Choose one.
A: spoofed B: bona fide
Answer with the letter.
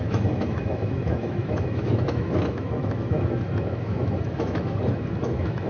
A